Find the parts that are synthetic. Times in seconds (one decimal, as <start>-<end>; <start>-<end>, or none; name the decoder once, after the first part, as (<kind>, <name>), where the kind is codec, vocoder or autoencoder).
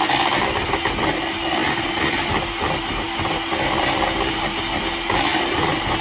none